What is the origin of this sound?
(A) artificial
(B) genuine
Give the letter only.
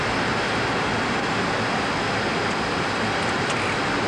B